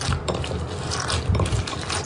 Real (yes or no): yes